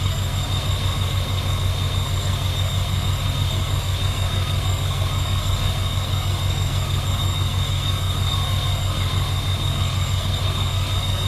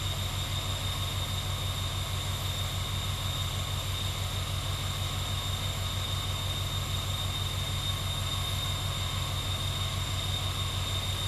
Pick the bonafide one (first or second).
second